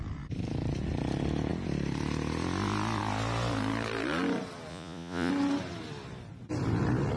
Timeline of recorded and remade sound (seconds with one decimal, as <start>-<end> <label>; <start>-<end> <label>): 0.0-4.7 recorded; 4.7-5.3 remade; 5.3-7.2 recorded